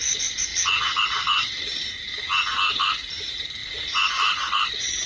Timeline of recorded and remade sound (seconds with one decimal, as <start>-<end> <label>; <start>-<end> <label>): 0.0-0.5 remade; 0.5-1.0 recorded; 1.0-2.3 remade; 2.3-3.1 recorded; 3.1-3.6 remade; 3.6-4.1 recorded; 4.1-5.1 remade